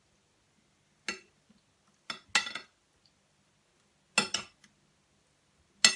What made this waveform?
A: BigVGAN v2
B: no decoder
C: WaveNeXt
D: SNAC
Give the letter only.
B